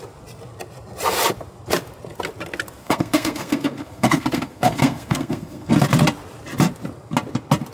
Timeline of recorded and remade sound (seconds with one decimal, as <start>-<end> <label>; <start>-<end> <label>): 0.0-2.8 recorded; 2.8-5.7 remade; 5.7-7.7 recorded

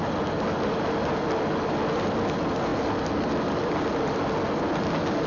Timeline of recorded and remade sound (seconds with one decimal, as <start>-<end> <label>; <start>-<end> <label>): 0.0-5.3 recorded